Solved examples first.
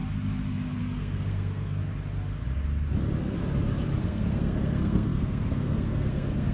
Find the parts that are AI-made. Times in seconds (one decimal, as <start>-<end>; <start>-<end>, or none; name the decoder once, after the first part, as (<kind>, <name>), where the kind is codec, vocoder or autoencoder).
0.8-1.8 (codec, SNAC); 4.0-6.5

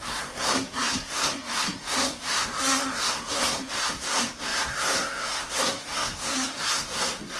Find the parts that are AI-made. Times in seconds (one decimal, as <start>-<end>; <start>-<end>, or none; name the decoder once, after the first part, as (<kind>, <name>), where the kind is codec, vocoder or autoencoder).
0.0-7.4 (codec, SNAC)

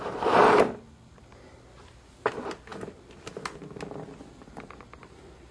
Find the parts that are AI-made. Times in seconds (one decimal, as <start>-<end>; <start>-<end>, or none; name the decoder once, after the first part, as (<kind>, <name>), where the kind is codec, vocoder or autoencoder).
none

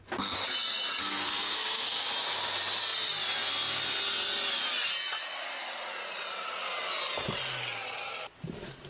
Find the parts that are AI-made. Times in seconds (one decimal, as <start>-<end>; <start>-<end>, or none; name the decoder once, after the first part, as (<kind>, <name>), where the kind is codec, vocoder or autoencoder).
1.0-2.1 (codec, SNAC)

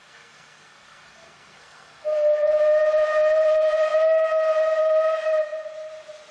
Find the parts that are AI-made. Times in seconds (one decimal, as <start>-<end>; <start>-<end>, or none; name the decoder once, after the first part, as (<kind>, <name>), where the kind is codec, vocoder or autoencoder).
0.0-2.6 (codec, SNAC)